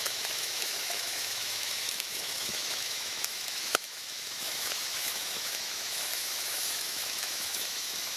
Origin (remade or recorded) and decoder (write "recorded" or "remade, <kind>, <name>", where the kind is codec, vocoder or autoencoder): remade, autoencoder, DAC-VAE